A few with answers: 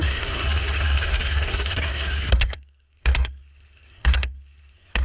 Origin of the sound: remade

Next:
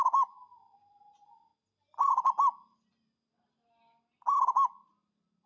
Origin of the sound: recorded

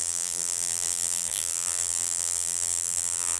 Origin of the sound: remade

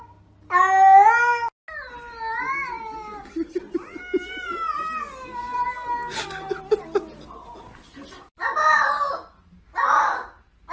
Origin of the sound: recorded